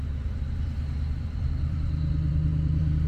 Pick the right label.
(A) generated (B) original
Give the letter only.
A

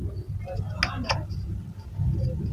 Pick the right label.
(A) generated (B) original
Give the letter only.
B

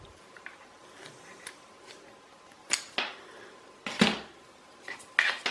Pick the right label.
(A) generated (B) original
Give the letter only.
B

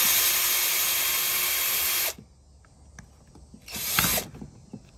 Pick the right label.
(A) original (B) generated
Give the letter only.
A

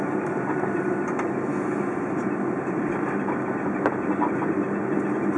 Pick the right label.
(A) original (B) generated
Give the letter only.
A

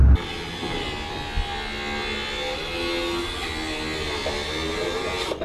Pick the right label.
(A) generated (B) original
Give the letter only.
B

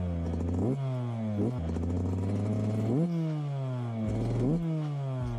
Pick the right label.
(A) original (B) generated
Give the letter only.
A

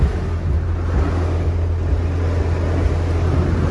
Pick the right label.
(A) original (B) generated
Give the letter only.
A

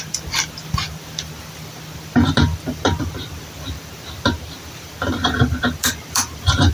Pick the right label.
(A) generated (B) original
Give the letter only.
A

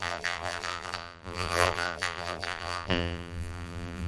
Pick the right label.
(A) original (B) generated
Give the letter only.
B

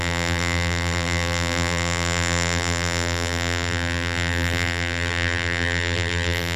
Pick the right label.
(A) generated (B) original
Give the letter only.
A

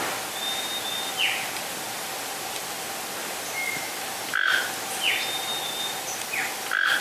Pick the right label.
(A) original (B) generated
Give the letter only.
A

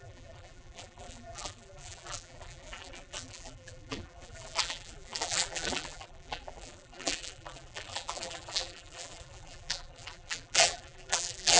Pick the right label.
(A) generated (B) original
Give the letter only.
A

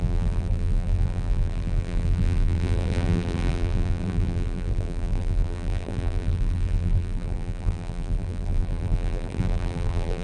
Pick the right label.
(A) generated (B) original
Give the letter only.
A